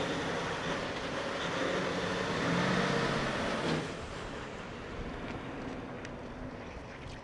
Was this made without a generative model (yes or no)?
yes